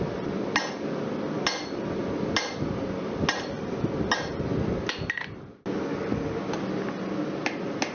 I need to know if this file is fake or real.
real